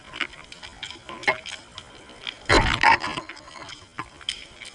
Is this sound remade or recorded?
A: recorded